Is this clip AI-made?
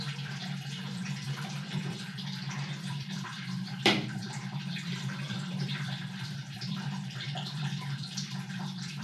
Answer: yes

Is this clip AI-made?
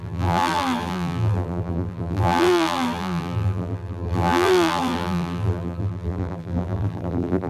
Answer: yes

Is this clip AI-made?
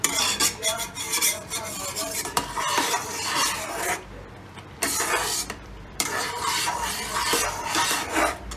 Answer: yes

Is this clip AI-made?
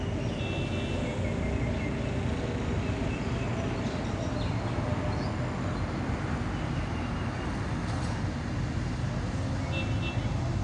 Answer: no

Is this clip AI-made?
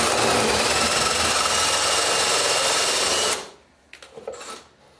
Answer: no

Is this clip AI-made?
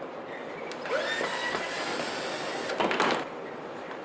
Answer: no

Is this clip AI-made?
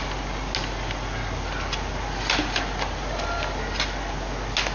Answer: no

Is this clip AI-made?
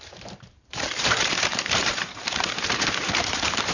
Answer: yes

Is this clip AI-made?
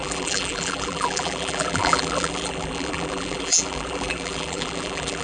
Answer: yes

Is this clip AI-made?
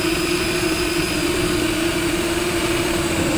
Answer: yes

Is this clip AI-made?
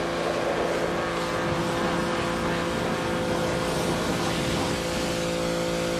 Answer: no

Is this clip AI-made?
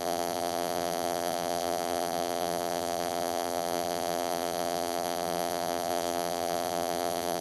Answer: yes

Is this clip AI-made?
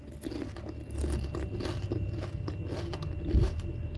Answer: no